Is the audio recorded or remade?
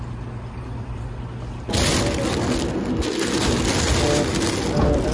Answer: recorded